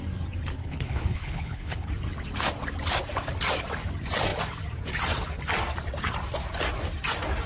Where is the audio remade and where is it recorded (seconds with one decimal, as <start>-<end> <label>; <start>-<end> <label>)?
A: 0.0-0.6 recorded; 0.6-1.9 remade; 1.9-7.5 recorded